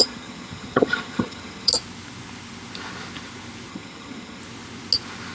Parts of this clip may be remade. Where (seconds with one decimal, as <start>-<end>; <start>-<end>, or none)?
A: 0.0-1.7; 3.7-4.4